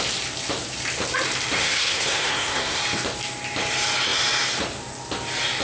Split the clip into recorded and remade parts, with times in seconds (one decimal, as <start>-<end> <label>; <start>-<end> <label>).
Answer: 0.0-1.6 recorded; 1.6-2.8 remade; 2.8-5.6 recorded